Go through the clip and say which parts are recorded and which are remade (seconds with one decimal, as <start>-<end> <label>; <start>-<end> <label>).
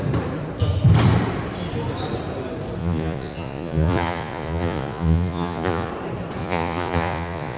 0.0-2.8 recorded; 2.8-5.9 remade; 5.9-6.4 recorded; 6.4-7.6 remade